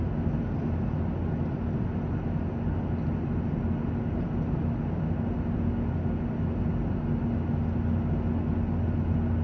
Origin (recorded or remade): recorded